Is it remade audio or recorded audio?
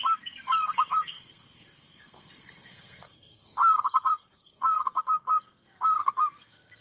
remade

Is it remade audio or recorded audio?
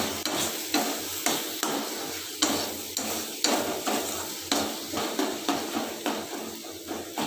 recorded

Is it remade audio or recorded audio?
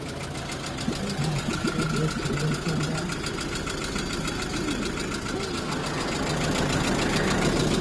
recorded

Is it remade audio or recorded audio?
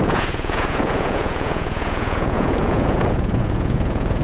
remade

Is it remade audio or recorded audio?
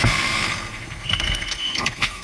remade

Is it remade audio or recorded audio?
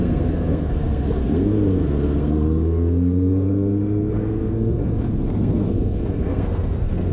remade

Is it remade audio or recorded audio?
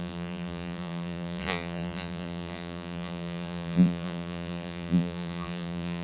remade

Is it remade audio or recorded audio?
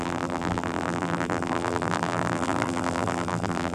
remade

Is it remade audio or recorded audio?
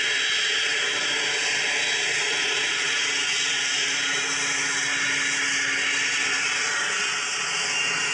recorded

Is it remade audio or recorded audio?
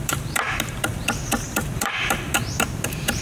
remade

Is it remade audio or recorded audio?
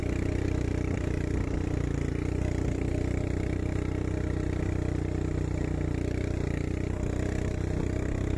recorded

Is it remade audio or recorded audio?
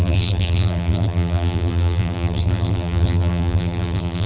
remade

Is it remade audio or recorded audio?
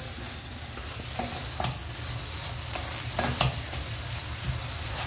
recorded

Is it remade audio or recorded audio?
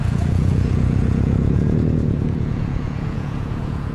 remade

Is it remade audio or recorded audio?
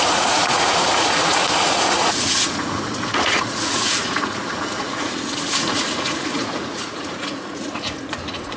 remade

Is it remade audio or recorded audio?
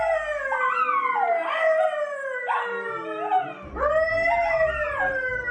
recorded